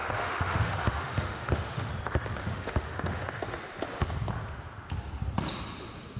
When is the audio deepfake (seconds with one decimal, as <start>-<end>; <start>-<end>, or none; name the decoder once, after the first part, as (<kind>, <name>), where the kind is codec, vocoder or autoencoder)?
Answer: 0.0-1.9 (autoencoder, DAC-VAE); 2.4-3.4